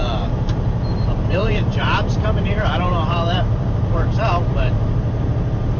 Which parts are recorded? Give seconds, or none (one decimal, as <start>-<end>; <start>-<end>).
none